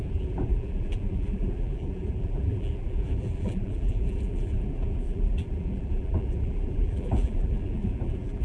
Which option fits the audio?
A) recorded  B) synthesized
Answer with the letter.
B